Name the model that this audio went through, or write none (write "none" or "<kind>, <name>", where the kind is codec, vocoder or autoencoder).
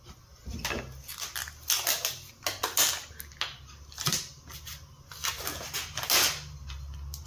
none